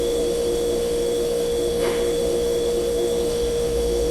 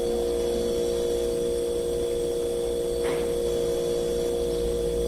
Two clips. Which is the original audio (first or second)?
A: second